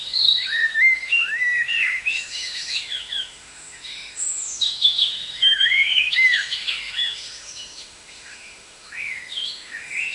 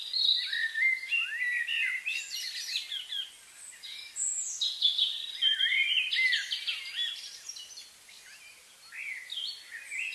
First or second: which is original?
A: second